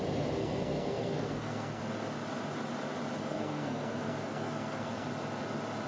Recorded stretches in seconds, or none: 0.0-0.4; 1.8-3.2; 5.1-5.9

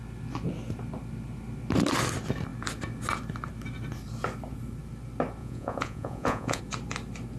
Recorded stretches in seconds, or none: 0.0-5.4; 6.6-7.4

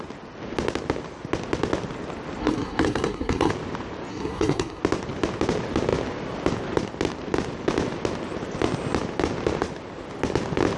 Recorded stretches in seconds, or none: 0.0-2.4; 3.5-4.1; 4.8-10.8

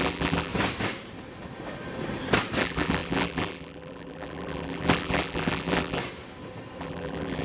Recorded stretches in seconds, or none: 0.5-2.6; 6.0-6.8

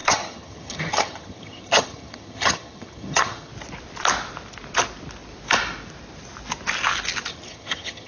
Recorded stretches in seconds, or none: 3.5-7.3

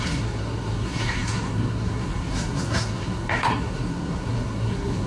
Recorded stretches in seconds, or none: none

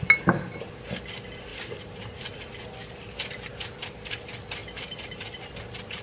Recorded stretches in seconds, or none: 0.0-1.5; 2.3-4.6; 5.4-6.0

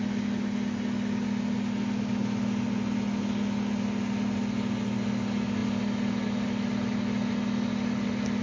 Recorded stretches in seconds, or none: 0.0-8.4